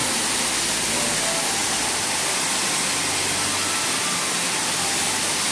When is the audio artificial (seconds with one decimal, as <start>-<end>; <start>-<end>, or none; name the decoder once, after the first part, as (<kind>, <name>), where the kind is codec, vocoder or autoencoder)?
none